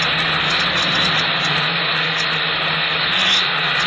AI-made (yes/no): no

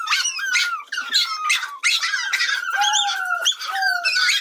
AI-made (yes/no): no